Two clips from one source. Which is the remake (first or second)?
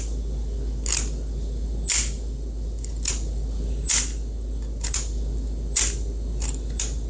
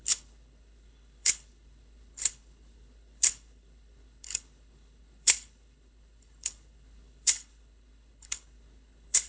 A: second